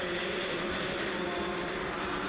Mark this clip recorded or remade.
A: recorded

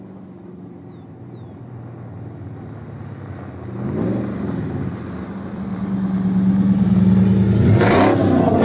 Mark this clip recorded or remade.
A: recorded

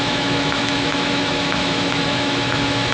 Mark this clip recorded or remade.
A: remade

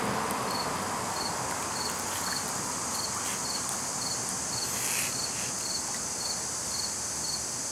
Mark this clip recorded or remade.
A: recorded